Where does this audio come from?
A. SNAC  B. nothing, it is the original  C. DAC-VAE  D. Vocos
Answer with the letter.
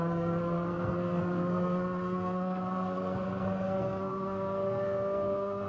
A